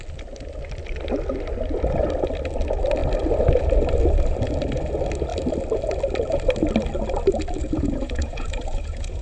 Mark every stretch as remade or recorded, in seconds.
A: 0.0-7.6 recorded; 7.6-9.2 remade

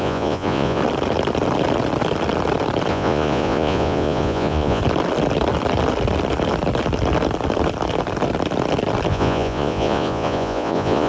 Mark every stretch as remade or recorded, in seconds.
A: 0.0-0.8 remade; 0.8-2.9 recorded; 2.9-4.8 remade; 4.8-9.1 recorded; 9.1-11.1 remade

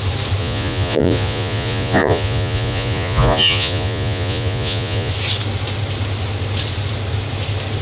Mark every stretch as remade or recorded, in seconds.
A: 0.0-0.4 recorded; 0.4-5.1 remade; 5.1-7.8 recorded

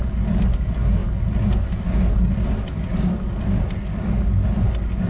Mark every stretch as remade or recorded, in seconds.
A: 0.0-5.1 recorded

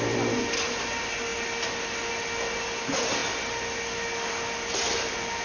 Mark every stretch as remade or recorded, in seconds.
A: 0.0-5.4 recorded

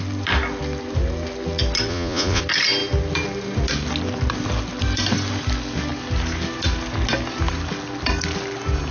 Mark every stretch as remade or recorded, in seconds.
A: 0.0-1.9 recorded; 1.9-2.4 remade; 2.4-8.9 recorded